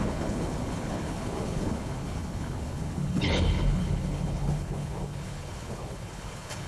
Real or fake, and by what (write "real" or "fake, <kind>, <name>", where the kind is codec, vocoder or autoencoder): fake, codec, HILCodec